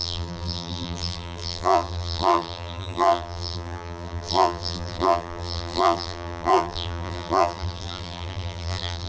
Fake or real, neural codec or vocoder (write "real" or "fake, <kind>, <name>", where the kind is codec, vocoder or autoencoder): fake, vocoder, BigVGAN v2